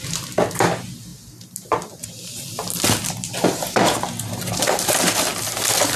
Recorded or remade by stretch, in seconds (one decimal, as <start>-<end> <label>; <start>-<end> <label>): 0.0-6.0 recorded